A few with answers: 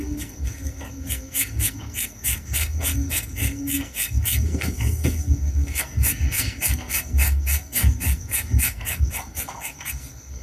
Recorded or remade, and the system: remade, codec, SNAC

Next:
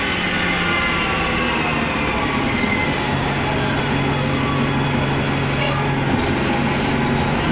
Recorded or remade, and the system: recorded